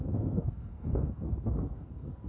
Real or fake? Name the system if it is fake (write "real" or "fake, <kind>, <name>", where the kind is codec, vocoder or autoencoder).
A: fake, codec, SNAC